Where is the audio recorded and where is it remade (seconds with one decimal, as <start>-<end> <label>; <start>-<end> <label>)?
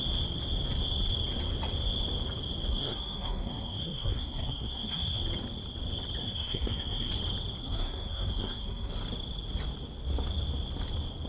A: 0.0-2.7 recorded; 2.7-5.2 remade; 5.2-6.2 recorded; 6.2-7.1 remade; 7.1-7.6 recorded; 7.6-8.9 remade; 8.9-11.3 recorded